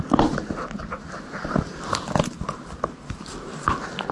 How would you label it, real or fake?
real